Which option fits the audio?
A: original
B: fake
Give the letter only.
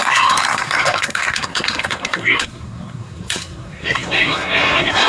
B